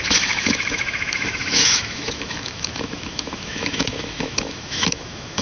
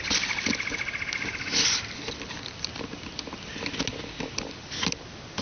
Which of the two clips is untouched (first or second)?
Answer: second